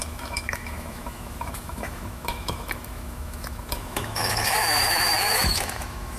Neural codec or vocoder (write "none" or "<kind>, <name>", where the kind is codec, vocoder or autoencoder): autoencoder, DAC-VAE